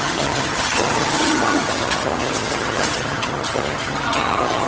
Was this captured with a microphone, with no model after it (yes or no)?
no